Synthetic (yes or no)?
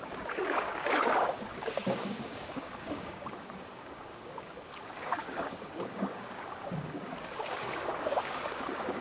yes